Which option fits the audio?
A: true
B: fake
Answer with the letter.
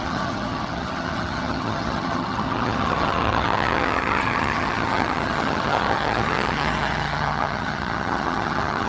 B